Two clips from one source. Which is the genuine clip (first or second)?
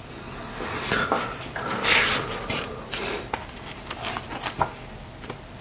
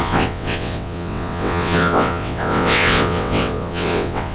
first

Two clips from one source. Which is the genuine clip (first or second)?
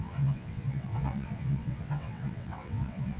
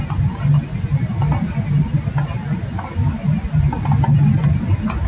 second